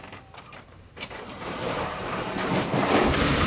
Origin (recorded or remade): remade